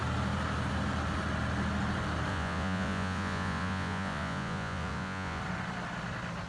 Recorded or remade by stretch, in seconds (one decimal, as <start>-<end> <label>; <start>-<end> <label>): 0.0-2.3 recorded; 2.3-5.4 remade; 5.4-6.5 recorded

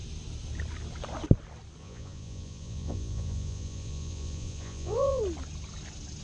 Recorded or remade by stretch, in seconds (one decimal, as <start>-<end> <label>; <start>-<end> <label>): 0.0-1.8 recorded; 1.8-5.2 remade; 5.2-6.2 recorded

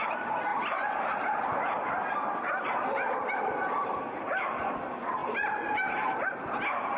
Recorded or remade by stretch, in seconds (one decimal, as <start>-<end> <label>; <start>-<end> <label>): 0.0-7.0 recorded

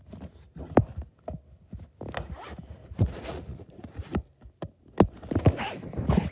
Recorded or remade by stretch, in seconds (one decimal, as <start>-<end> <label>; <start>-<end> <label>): 0.0-2.8 recorded; 2.8-4.1 remade; 4.1-6.3 recorded

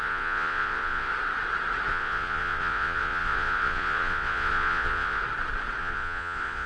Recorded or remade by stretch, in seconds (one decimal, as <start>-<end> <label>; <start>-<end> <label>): 0.0-1.1 remade; 1.1-1.9 recorded; 1.9-5.2 remade; 5.2-5.8 recorded; 5.8-6.7 remade

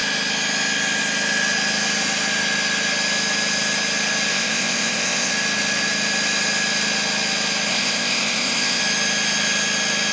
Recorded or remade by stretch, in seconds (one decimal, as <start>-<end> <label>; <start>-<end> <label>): 0.0-4.3 recorded; 4.3-5.3 remade; 5.3-7.7 recorded; 7.7-8.8 remade; 8.8-10.1 recorded

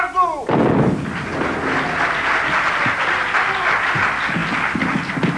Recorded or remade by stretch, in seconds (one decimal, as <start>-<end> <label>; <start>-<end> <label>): 0.0-5.4 recorded